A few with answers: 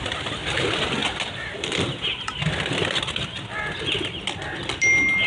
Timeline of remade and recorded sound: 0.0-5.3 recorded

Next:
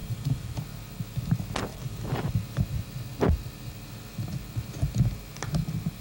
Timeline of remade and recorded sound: 0.0-0.6 remade; 0.6-1.7 recorded; 1.7-2.3 remade; 2.3-6.0 recorded

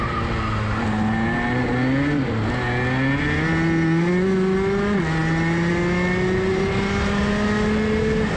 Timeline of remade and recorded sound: 0.0-6.5 recorded; 6.5-7.3 remade; 7.3-8.4 recorded

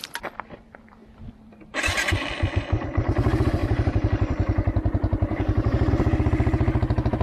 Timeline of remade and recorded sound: 0.0-7.2 remade

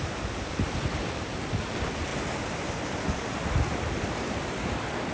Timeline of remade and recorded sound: 0.0-2.1 remade; 2.1-2.8 recorded; 2.8-5.1 remade

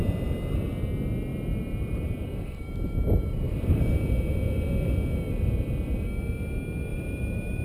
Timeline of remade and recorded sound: 0.0-1.3 recorded; 1.3-3.8 remade; 3.8-6.9 recorded; 6.9-7.6 remade